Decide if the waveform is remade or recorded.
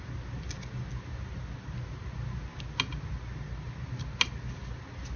recorded